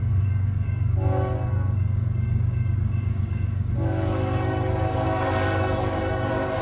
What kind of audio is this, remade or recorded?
remade